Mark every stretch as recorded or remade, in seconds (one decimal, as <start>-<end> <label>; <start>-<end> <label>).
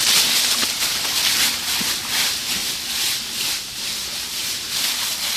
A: 0.0-5.4 recorded